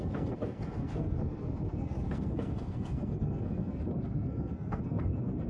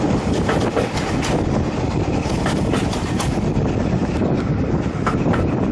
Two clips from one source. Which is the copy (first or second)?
first